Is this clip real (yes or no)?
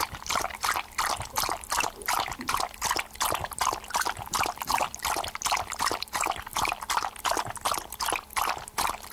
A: yes